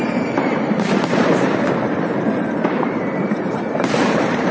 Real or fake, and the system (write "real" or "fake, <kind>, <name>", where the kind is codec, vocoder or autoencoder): fake, vocoder, BigVGAN v2